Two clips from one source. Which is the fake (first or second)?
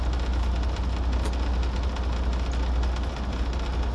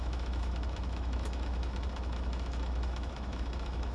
second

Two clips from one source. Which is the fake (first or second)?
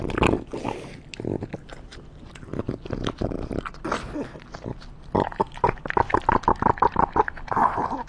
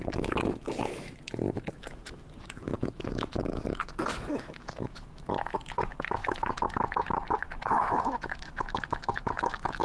second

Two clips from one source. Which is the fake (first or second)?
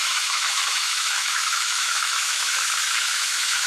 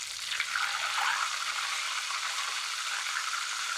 first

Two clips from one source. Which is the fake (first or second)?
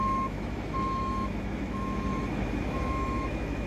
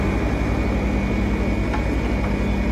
first